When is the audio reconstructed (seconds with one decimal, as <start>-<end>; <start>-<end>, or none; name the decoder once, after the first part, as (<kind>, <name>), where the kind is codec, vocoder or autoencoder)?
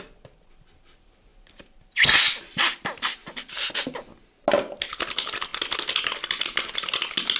none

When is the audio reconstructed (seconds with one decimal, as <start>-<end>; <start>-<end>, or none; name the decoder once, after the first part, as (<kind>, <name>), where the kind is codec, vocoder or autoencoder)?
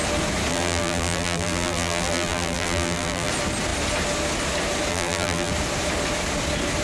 0.5-3.3 (vocoder, BigVGAN v2); 4.9-5.5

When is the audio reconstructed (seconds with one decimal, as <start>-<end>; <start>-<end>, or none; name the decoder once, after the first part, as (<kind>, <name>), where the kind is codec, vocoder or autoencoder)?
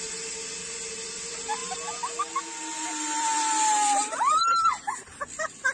none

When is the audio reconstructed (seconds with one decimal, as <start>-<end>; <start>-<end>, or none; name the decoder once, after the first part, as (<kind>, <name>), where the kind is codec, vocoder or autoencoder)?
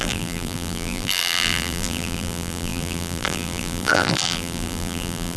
0.0-5.4 (vocoder, BigVGAN v2)